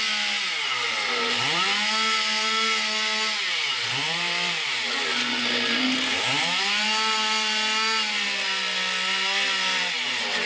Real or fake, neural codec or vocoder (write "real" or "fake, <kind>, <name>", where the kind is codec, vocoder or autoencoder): real